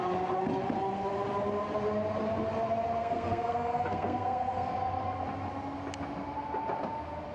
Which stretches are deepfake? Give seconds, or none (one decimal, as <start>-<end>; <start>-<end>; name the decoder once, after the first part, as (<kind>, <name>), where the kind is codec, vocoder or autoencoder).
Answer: 3.0-4.7 (codec, SNAC)